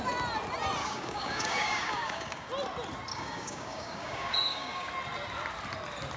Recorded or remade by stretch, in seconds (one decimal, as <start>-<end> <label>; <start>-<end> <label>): 0.0-0.8 recorded; 0.8-2.5 remade; 2.5-3.1 recorded; 3.1-4.9 remade; 4.9-6.2 recorded